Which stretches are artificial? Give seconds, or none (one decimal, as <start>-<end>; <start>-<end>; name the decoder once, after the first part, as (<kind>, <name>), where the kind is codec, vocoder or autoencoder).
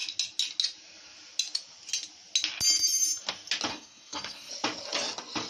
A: 3.7-4.5 (codec, SNAC)